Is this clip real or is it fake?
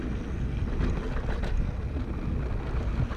real